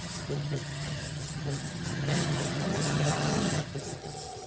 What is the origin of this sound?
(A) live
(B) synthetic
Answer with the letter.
B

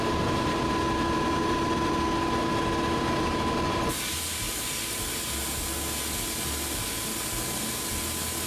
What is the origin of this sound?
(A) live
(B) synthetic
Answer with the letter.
A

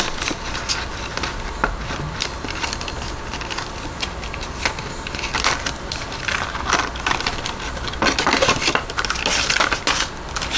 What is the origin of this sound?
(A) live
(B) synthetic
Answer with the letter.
A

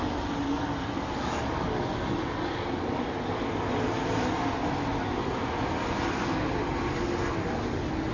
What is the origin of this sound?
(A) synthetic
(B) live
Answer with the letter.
B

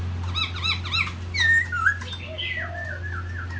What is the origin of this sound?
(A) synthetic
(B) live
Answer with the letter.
B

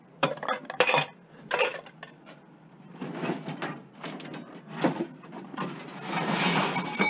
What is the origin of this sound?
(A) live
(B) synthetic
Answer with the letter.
A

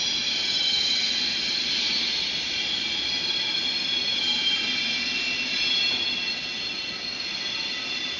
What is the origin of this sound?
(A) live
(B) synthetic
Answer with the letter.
A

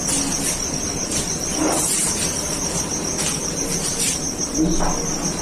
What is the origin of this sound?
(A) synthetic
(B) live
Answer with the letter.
B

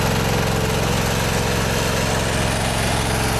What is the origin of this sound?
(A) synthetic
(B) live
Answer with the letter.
B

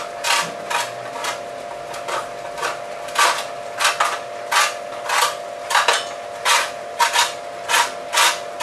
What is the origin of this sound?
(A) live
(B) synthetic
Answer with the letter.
A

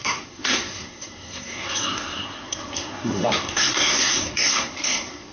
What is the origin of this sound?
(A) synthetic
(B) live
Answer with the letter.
A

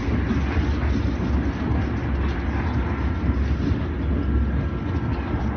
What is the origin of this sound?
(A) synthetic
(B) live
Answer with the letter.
B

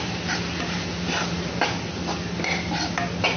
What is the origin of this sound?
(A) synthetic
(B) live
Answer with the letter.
B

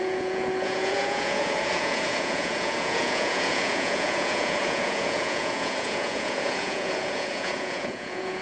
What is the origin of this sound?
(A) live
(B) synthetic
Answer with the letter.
B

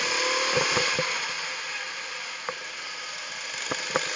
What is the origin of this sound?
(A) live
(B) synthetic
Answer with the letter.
A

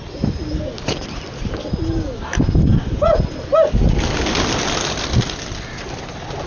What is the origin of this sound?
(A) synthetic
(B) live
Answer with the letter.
B